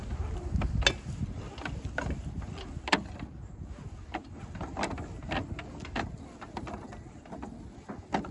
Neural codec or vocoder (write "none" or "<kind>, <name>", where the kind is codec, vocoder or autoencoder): none